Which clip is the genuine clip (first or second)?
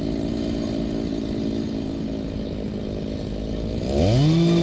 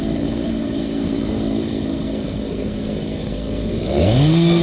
first